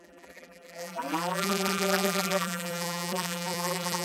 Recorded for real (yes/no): no